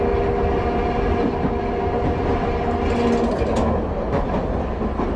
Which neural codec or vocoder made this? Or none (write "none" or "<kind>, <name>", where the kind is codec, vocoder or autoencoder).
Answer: none